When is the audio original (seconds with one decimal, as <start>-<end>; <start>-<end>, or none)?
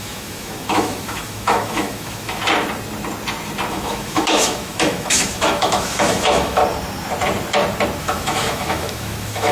2.4-3.7; 6.6-8.0